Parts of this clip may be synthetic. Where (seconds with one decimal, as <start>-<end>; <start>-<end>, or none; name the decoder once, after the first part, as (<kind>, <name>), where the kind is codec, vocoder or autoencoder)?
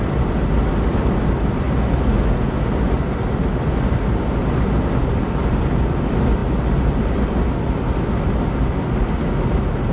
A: none